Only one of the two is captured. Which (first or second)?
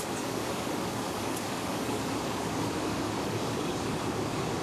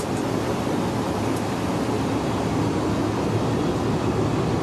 second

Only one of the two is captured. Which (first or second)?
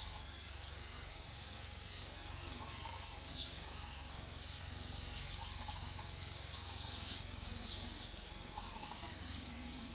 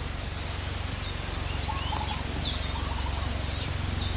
second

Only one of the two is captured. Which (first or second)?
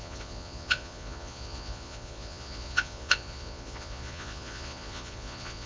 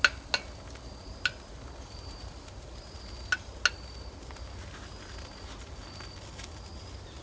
second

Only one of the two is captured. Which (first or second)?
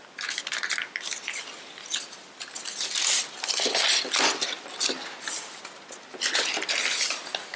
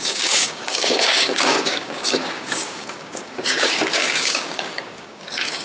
first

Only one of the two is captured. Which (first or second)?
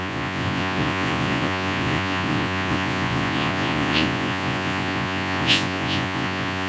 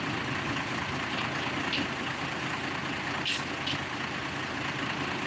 second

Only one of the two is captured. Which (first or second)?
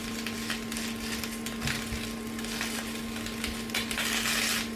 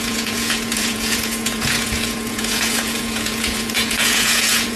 first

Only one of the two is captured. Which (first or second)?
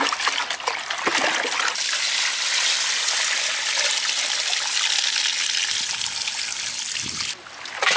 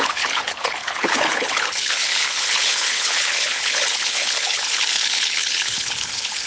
first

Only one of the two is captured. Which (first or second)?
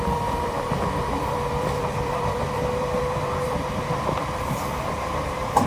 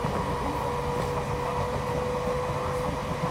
second